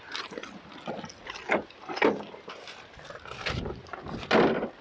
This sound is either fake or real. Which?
real